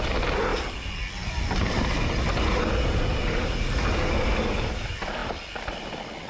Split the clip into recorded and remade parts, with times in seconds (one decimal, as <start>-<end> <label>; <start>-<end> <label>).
0.0-6.3 recorded